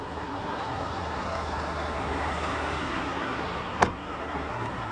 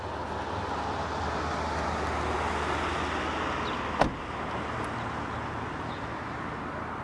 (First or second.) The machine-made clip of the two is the first